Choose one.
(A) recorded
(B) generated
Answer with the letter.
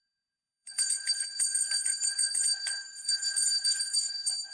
B